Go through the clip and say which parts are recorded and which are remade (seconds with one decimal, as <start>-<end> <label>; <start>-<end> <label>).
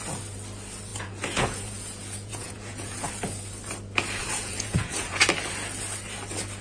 0.0-0.9 recorded; 0.9-3.1 remade; 3.1-4.2 recorded; 4.2-5.2 remade; 5.2-6.6 recorded